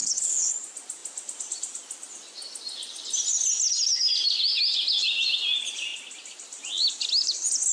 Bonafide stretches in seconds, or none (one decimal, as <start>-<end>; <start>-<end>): 0.5-7.7